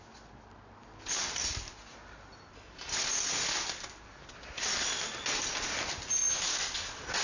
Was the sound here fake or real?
real